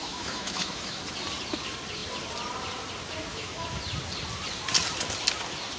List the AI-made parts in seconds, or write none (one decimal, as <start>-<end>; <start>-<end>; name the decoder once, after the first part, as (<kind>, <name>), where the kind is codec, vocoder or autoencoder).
0.0-1.0 (autoencoder, DAC-VAE); 3.3-3.8